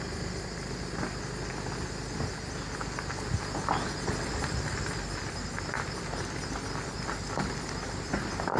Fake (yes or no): no